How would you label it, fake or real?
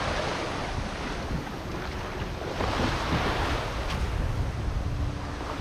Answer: real